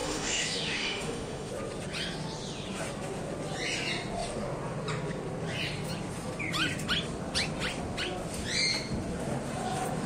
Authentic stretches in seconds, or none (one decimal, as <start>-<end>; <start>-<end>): 1.5-10.1

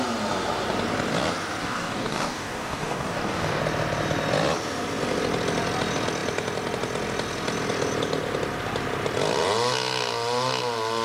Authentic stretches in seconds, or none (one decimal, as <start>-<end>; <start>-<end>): 0.0-1.6; 3.6-11.0

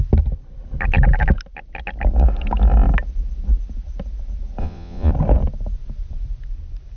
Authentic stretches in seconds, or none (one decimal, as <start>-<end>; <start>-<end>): 0.0-4.6; 5.1-7.0

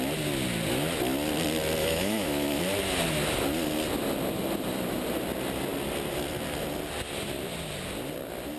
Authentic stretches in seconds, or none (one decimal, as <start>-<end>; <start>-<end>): 0.0-1.8; 2.6-8.6